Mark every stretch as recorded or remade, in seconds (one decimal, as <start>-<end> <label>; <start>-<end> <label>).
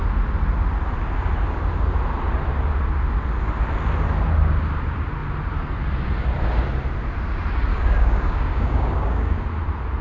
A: 0.0-7.7 recorded; 7.7-9.4 remade; 9.4-10.0 recorded